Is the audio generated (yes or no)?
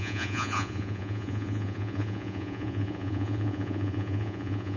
yes